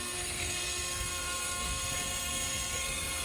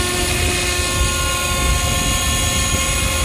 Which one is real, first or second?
second